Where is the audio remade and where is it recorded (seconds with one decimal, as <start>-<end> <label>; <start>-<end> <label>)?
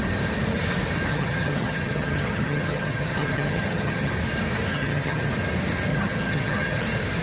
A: 0.0-1.1 recorded; 1.1-4.1 remade; 4.1-4.7 recorded; 4.7-5.3 remade; 5.3-5.9 recorded; 5.9-6.8 remade; 6.8-7.2 recorded